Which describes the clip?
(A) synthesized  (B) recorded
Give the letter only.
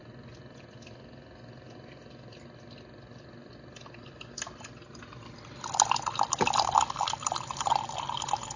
B